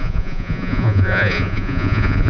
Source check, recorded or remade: remade